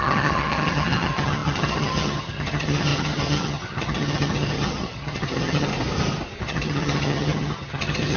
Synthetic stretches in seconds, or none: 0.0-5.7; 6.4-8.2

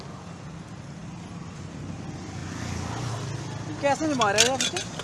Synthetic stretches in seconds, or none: none

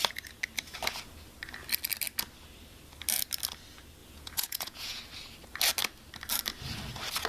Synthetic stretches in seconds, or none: 4.0-5.0

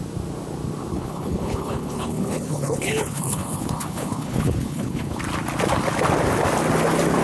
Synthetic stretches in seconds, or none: 0.9-5.2

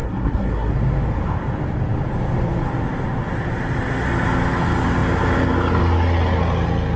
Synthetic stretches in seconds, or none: 0.0-0.7

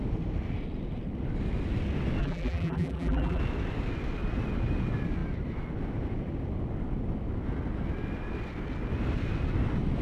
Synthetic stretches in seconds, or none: 2.2-3.4

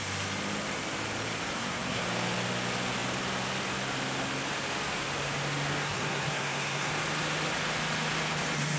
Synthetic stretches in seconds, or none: 1.5-2.0; 5.8-6.9

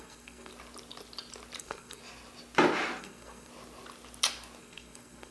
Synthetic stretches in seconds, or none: 0.0-0.5; 1.6-2.0; 3.0-3.5; 4.6-5.3